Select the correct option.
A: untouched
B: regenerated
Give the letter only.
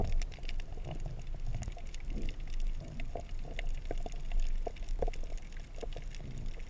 A